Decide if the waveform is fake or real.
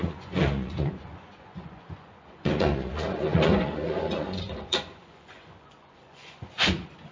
fake